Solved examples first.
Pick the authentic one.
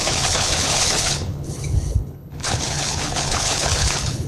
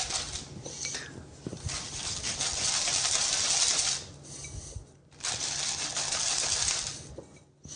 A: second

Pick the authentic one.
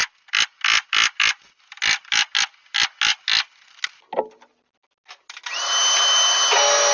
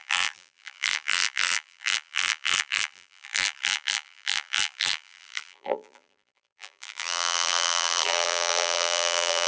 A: first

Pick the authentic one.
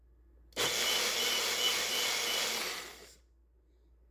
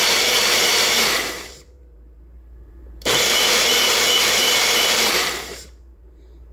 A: first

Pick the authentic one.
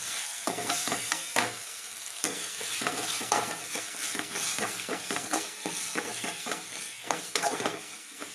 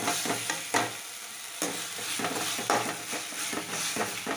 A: second